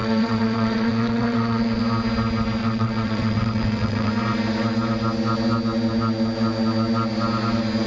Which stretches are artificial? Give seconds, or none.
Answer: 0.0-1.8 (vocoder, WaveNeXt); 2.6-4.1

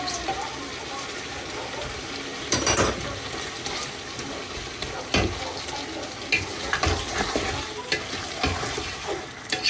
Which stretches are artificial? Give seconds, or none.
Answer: none

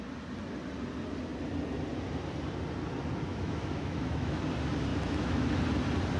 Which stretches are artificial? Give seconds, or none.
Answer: 3.3-4.4 (autoencoder, DAC-VAE); 4.9-5.5

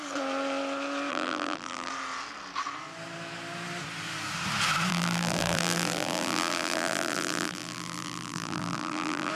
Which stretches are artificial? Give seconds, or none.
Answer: 1.1-1.9 (vocoder, BigVGAN v2); 4.9-9.3

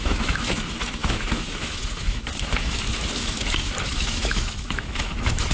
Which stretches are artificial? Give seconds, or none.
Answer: 0.0-5.5 (autoencoder, DAC-VAE)

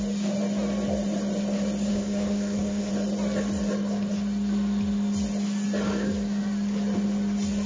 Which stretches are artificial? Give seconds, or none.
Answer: 1.9-2.9 (codec, SNAC)